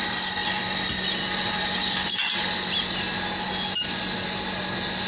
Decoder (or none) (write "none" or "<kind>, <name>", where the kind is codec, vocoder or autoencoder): none